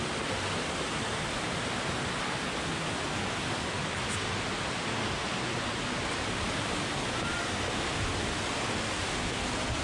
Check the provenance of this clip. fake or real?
real